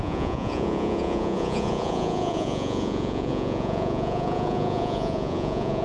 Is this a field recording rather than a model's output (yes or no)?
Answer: no